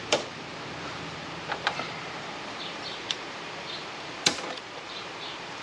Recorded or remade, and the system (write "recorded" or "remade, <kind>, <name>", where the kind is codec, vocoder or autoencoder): remade, vocoder, BigVGAN v2